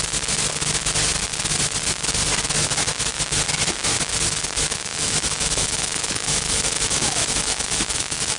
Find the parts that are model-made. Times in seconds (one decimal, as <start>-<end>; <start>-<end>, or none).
4.9-8.4